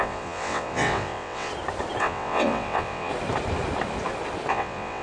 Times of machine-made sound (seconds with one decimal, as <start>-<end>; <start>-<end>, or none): 0.0-1.5; 2.0-3.1; 4.5-5.0